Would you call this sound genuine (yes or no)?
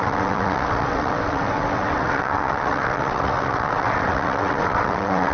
no